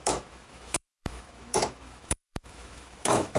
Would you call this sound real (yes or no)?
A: no